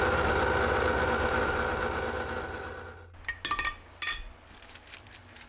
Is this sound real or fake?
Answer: real